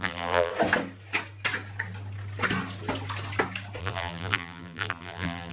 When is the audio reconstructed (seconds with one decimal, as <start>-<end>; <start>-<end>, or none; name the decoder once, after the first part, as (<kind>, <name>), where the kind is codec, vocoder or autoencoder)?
0.0-0.5 (vocoder, BigVGAN v2); 3.8-5.5